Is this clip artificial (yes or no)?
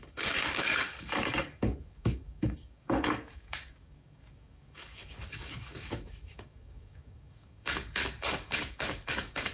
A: yes